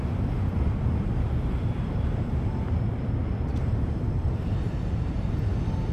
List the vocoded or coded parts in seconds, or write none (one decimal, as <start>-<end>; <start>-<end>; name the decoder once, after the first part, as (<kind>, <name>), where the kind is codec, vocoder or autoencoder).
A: 3.5-5.4 (vocoder, BigVGAN v2)